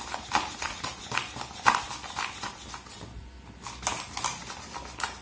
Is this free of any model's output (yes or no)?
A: yes